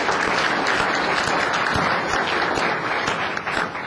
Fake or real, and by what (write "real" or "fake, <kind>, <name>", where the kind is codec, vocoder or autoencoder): real